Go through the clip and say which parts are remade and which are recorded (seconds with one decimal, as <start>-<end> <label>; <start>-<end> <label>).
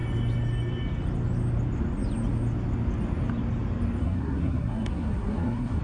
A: 0.0-4.0 recorded; 4.0-5.8 remade